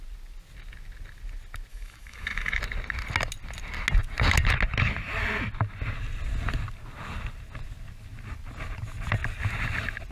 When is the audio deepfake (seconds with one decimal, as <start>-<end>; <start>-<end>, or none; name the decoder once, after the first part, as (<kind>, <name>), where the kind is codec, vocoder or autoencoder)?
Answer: 1.7-2.6 (autoencoder, DAC-VAE)